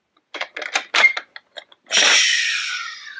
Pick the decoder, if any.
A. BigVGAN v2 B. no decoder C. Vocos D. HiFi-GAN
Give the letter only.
B